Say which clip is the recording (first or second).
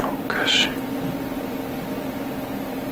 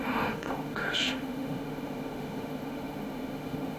first